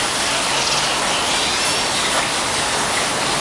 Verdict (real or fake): real